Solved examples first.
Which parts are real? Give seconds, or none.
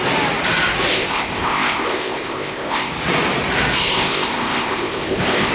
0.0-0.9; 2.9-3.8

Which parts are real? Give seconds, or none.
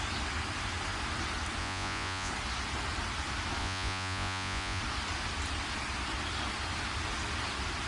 0.0-1.6; 2.3-3.6; 4.8-7.9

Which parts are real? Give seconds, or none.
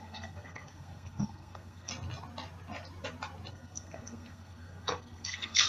1.9-3.5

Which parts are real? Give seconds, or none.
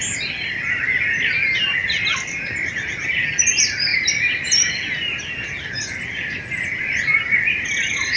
0.0-8.2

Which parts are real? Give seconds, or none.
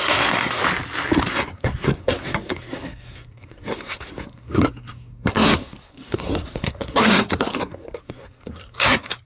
0.6-1.2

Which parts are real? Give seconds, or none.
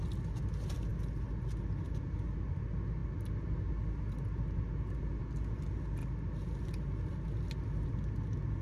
0.0-8.6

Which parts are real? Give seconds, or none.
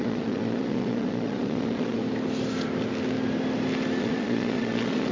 2.0-4.0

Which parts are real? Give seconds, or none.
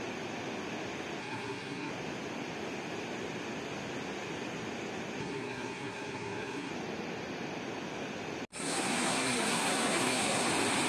0.0-1.2; 1.9-5.2; 6.7-8.5; 10.5-10.9